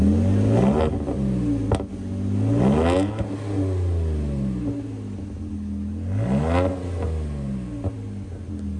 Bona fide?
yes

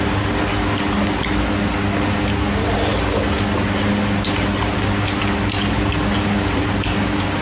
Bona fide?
yes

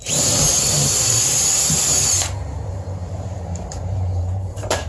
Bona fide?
no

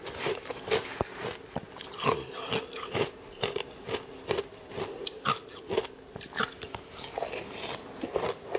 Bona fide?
yes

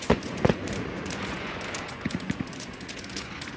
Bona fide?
no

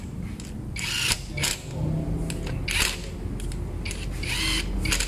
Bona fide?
yes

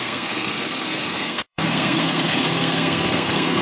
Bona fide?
no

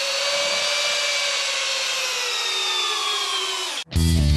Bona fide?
yes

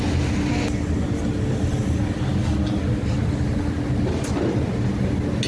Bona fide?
yes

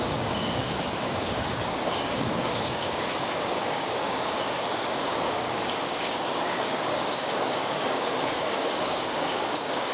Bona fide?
no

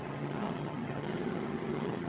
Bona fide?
no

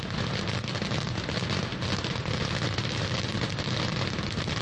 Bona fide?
yes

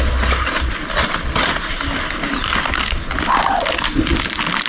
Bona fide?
yes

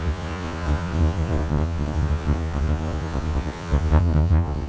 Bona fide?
no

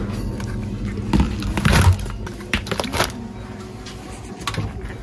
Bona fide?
yes